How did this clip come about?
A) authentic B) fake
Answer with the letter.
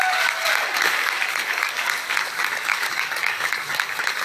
B